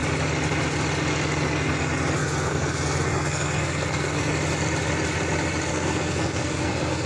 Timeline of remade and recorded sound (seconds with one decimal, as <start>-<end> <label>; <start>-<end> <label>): 0.0-2.2 recorded; 2.2-4.3 remade; 4.3-5.7 recorded; 5.7-7.1 remade